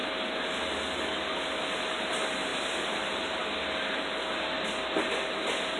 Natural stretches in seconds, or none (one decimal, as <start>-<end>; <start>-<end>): 0.0-2.5; 3.4-5.8